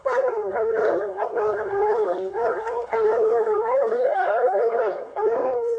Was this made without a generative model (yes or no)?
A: no